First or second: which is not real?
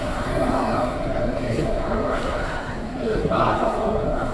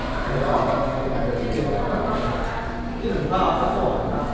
first